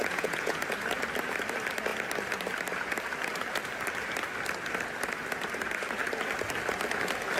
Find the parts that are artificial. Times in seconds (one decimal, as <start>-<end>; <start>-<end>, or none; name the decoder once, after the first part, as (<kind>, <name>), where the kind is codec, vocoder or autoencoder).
0.0-0.6 (vocoder, Vocos)